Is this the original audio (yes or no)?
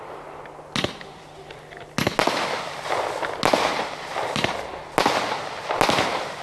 yes